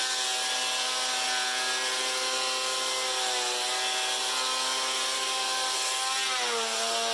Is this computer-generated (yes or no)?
no